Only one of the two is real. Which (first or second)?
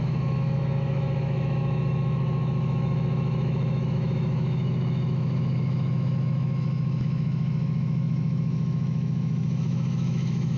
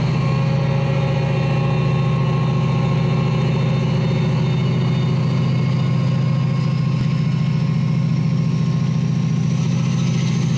second